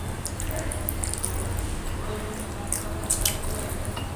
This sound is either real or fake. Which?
real